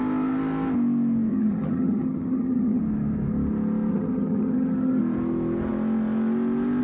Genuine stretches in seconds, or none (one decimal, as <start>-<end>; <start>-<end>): 0.0-1.3; 2.8-3.9; 5.0-6.8